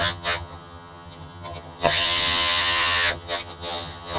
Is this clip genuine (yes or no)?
no